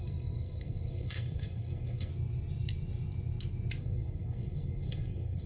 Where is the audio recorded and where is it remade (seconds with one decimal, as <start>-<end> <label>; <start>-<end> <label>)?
0.0-2.1 remade; 2.1-3.8 recorded; 3.8-5.5 remade